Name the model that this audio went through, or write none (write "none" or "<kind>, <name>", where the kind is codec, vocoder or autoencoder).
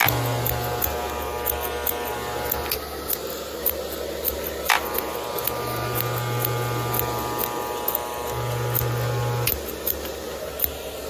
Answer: none